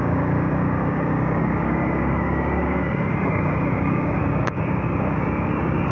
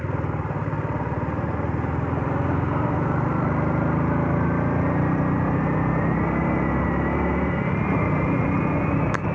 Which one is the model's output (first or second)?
first